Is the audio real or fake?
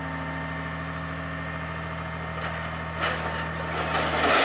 real